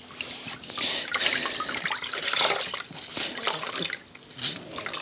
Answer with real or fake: real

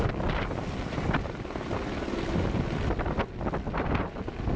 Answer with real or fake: real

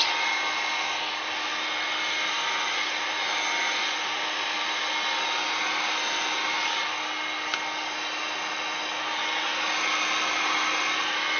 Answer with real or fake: real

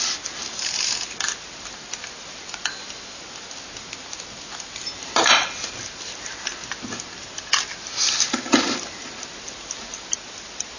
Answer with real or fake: real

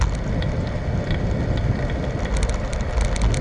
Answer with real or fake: real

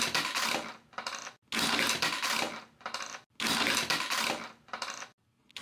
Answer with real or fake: real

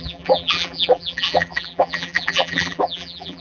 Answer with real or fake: fake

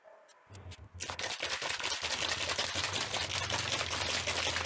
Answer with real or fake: real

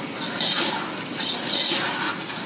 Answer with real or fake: real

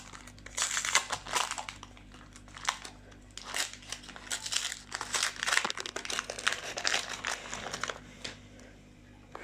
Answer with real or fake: real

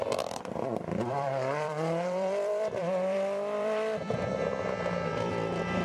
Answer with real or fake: fake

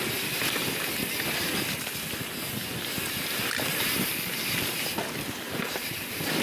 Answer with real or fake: real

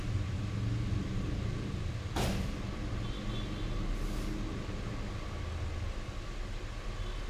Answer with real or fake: real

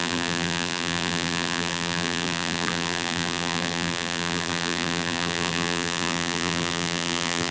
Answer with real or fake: fake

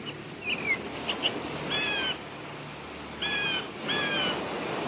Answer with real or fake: real